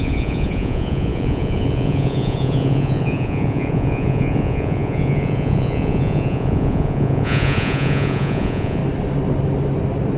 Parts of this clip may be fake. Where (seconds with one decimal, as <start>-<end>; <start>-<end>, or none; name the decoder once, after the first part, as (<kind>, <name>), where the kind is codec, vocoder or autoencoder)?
0.0-8.8 (vocoder, Vocos)